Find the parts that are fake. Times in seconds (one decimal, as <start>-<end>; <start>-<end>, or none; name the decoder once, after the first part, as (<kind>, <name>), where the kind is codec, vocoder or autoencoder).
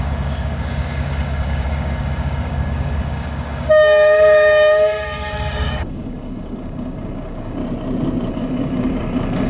0.0-7.6 (codec, DAC); 8.3-9.5